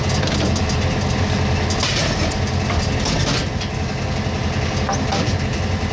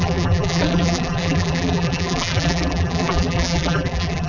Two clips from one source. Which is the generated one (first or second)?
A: second